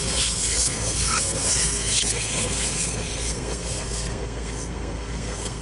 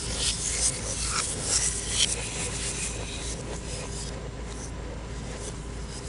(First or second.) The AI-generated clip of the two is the first